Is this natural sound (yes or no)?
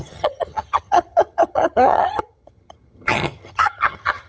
no